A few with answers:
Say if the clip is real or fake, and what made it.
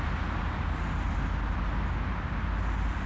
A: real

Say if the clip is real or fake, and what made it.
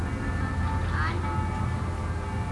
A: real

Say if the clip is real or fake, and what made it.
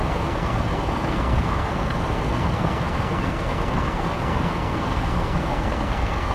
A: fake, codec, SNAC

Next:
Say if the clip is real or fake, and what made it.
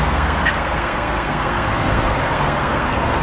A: fake, codec, SNAC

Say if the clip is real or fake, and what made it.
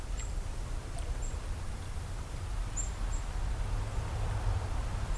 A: real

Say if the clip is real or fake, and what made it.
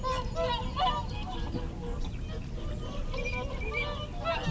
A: real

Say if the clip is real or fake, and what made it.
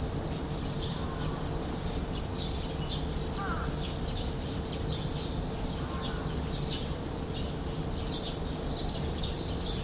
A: real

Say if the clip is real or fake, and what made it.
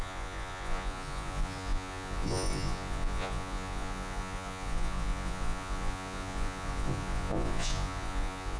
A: fake, vocoder, Vocos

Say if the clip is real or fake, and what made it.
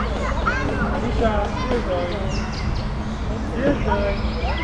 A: real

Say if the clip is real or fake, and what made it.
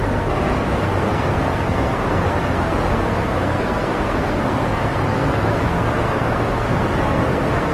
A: fake, codec, SNAC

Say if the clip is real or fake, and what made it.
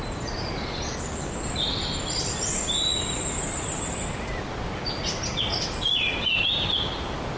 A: real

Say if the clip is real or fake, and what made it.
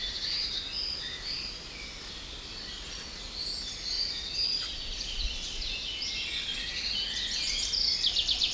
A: real